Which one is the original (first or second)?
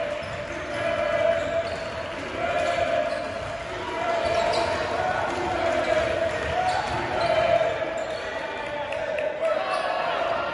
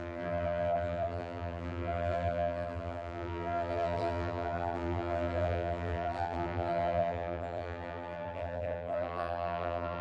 first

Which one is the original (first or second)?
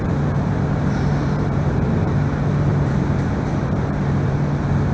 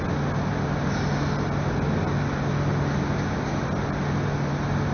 second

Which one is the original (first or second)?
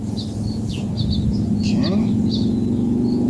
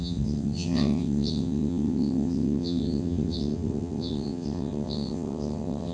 first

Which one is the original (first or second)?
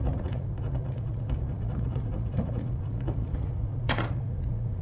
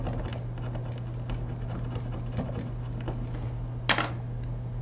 second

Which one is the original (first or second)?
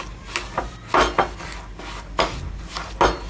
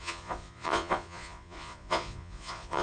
first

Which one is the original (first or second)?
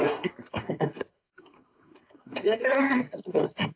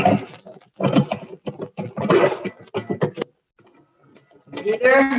second